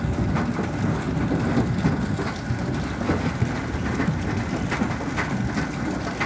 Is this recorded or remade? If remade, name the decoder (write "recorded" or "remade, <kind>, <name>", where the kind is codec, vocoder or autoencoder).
recorded